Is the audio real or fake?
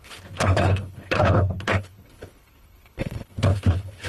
fake